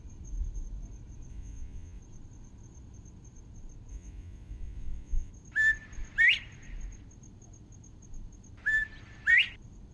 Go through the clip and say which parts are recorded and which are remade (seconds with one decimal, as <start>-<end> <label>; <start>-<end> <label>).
0.0-1.3 recorded; 1.3-2.0 remade; 2.0-3.9 recorded; 3.9-5.3 remade; 5.3-9.9 recorded